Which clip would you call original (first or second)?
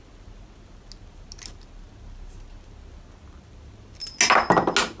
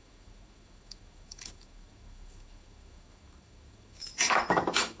first